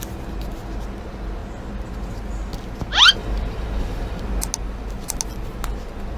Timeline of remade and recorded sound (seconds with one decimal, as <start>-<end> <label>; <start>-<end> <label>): 0.0-3.2 recorded; 3.2-4.2 remade; 4.2-6.2 recorded